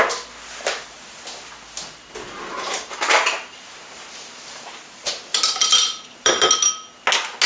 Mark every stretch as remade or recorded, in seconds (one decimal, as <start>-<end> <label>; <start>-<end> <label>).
0.0-2.5 recorded; 2.5-5.1 remade; 5.1-5.6 recorded; 5.6-6.5 remade; 6.5-7.5 recorded